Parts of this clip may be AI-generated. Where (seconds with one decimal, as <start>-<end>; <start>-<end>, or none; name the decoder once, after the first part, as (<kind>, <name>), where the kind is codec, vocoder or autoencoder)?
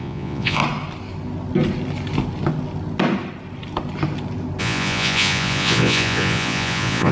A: 0.0-0.6 (vocoder, Vocos); 4.6-7.1